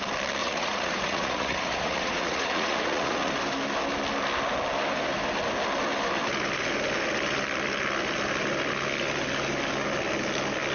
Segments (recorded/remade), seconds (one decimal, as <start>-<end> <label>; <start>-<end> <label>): 0.0-0.4 recorded; 0.4-3.3 remade; 3.3-10.7 recorded